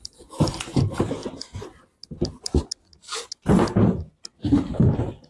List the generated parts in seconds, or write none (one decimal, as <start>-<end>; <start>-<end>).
0.0-1.2; 4.4-5.3